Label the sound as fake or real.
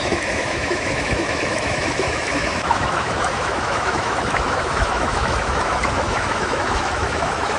fake